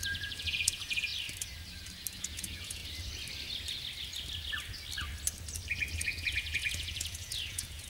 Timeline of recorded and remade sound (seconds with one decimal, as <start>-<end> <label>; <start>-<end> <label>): 0.0-1.1 remade; 1.1-2.2 recorded; 2.2-2.8 remade; 2.8-6.0 recorded; 6.0-7.9 remade